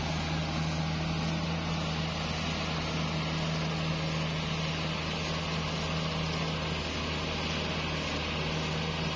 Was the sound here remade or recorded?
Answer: recorded